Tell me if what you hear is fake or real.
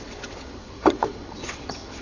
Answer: fake